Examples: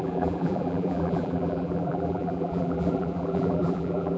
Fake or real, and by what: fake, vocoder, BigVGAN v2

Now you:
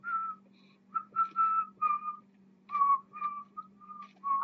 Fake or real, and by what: fake, vocoder, BigVGAN v2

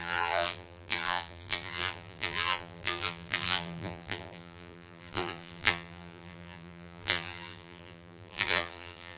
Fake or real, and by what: fake, vocoder, BigVGAN v2